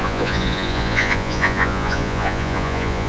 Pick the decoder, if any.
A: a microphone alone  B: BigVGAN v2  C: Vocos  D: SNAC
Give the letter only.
C